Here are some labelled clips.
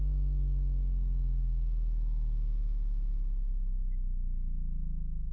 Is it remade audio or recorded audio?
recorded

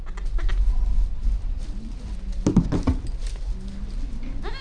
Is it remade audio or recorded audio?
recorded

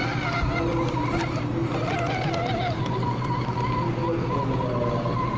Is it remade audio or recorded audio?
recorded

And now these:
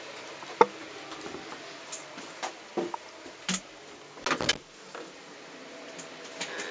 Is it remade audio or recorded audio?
recorded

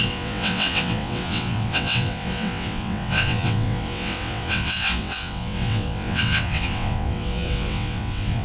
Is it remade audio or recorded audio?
remade